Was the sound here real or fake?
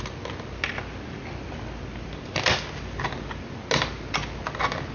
real